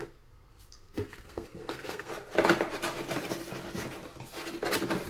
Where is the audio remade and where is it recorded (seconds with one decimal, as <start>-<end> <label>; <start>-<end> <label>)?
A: 0.0-2.1 remade; 2.1-5.1 recorded

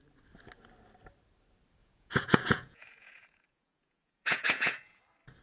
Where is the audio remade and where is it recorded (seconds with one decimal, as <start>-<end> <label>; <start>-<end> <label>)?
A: 0.0-1.8 recorded; 1.8-5.0 remade; 5.0-5.4 recorded